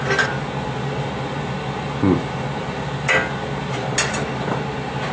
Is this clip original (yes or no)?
yes